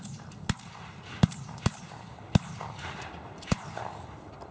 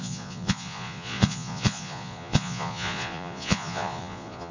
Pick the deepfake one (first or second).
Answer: second